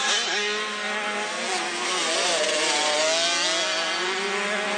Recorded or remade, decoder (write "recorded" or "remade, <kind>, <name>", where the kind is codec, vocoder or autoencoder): recorded